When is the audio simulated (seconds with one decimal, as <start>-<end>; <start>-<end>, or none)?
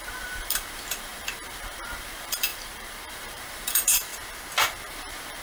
0.0-4.1; 4.9-5.4